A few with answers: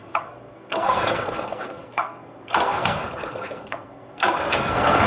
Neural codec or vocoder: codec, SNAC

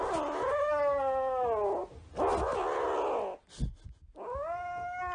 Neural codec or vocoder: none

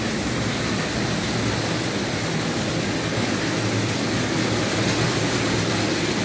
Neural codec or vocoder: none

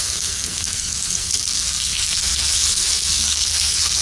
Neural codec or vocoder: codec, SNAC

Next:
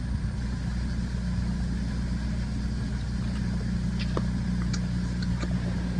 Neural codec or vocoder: none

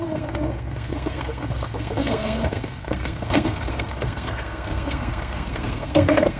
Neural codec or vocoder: codec, SNAC